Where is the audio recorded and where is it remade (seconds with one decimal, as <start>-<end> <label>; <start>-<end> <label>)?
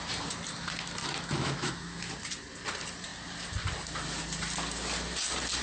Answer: 0.0-1.0 recorded; 1.0-2.1 remade; 2.1-5.6 recorded